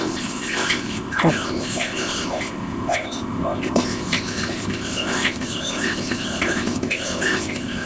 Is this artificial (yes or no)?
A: yes